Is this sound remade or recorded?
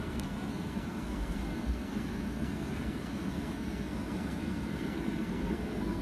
remade